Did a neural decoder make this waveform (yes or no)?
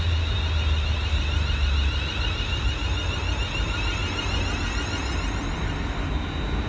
no